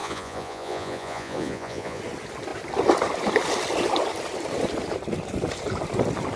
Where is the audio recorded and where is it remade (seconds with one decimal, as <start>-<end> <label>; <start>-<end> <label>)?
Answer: 0.0-2.0 remade; 2.0-6.4 recorded